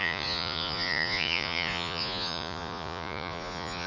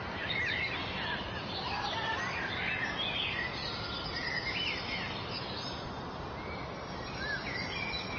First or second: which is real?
second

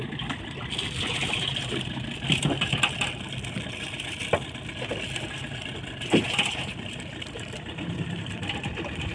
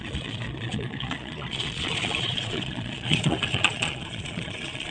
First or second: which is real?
first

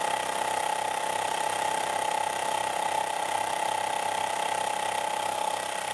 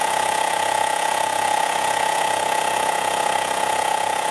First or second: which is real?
first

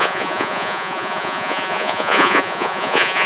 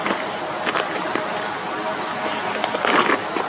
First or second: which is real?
second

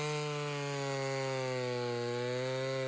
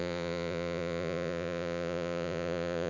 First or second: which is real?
first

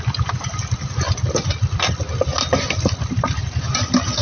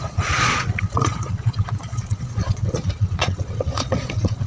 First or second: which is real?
first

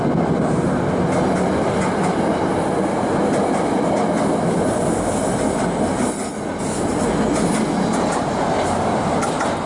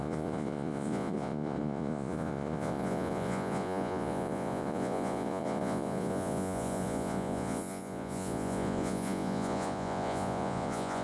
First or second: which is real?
first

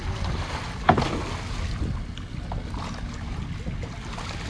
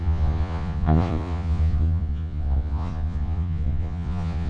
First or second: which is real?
first